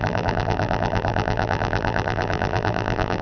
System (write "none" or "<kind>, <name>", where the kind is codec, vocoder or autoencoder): vocoder, BigVGAN v2